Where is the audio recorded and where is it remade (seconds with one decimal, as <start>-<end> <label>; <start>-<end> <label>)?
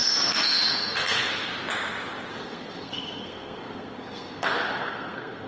0.0-1.5 remade; 1.5-2.3 recorded; 2.3-5.5 remade